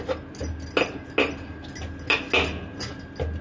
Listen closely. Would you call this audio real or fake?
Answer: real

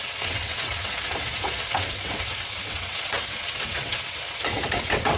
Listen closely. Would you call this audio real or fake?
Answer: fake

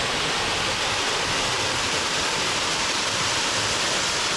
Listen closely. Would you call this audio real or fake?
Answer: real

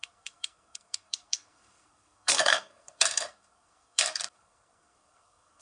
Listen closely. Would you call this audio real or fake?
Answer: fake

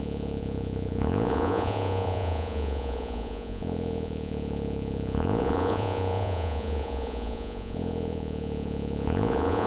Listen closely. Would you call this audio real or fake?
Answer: fake